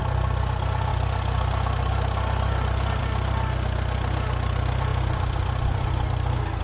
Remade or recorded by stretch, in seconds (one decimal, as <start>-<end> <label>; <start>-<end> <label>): 0.0-6.6 recorded